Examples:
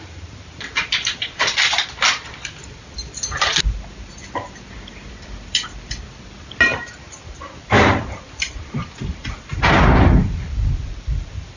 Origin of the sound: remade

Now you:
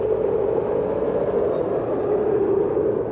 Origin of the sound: recorded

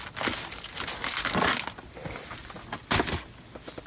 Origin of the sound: recorded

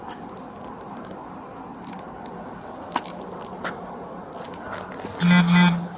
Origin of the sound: recorded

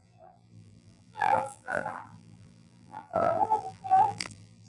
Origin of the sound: remade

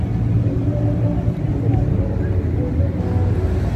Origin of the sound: recorded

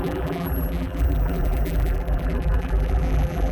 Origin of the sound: remade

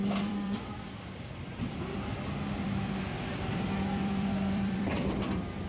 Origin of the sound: remade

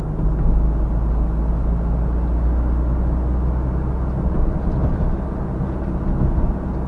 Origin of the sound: recorded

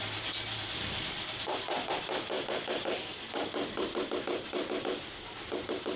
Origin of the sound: remade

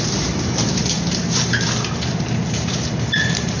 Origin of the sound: remade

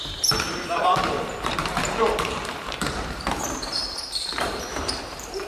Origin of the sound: remade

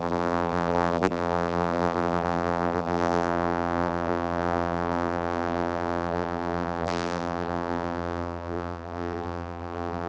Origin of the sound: remade